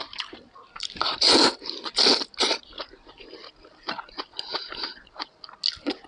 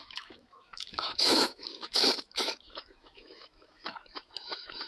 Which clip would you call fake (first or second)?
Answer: second